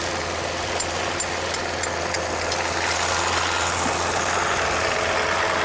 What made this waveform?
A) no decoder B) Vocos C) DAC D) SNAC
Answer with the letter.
A